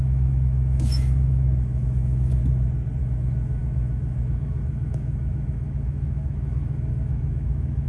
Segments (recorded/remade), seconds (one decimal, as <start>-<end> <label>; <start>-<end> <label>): 0.0-2.4 remade; 2.4-3.0 recorded; 3.0-7.9 remade